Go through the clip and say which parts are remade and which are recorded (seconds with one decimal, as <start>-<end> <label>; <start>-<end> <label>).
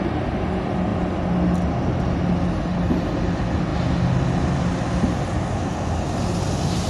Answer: 0.0-6.9 recorded